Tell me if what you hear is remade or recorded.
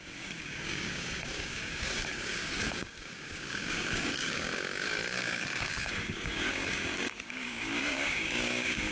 remade